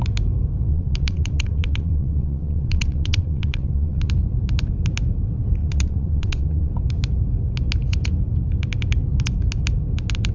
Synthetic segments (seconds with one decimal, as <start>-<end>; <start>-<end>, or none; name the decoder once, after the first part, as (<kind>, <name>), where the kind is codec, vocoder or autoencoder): 0.7-4.1 (vocoder, WaveNeXt); 5.6-6.7

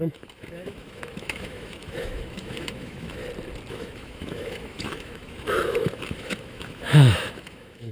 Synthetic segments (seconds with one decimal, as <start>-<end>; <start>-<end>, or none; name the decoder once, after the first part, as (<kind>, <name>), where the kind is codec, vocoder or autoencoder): 0.0-3.2 (autoencoder, DAC-VAE); 3.7-7.9